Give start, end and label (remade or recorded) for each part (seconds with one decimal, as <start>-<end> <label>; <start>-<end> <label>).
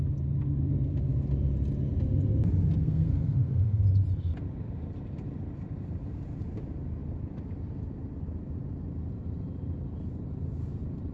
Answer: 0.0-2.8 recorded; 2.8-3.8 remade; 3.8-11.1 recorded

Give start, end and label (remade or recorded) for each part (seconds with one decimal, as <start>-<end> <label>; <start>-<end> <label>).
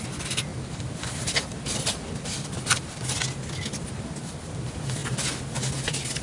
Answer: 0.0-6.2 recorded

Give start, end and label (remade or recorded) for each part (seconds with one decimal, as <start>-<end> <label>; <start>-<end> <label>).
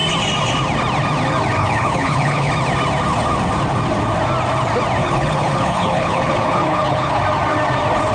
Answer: 0.0-1.6 recorded; 1.6-2.5 remade; 2.5-5.0 recorded; 5.0-7.2 remade; 7.2-8.1 recorded